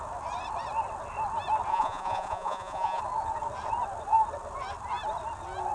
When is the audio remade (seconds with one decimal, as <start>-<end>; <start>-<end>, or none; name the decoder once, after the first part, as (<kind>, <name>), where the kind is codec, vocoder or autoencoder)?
1.7-3.0 (vocoder, Vocos)